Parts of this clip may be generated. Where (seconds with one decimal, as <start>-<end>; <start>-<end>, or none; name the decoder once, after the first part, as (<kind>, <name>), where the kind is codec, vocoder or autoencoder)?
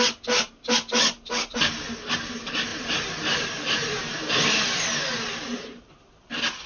2.7-4.5 (vocoder, BigVGAN v2); 5.5-6.1